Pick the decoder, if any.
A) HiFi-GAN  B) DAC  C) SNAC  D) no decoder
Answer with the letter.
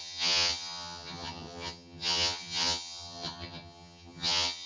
A